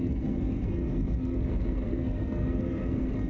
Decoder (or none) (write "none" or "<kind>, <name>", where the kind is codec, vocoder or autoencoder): codec, SNAC